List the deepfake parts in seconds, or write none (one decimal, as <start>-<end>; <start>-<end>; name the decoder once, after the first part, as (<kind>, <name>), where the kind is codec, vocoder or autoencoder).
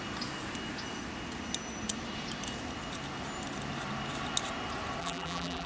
5.0-5.7 (vocoder, BigVGAN v2)